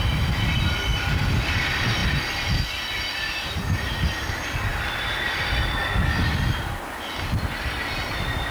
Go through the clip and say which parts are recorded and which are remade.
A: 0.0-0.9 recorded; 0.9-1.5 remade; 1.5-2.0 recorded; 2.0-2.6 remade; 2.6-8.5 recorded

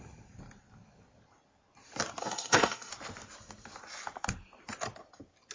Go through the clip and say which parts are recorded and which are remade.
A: 0.0-2.2 recorded; 2.2-2.9 remade; 2.9-5.5 recorded